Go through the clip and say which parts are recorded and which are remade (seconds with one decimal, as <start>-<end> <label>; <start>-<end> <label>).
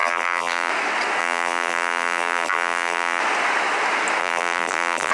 0.0-0.7 remade; 0.7-1.2 recorded; 1.2-3.2 remade; 3.2-4.2 recorded; 4.2-5.1 remade